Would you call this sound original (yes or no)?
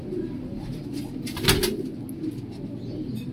yes